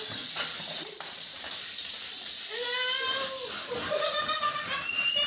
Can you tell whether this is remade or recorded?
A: recorded